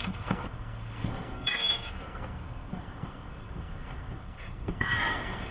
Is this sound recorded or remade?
remade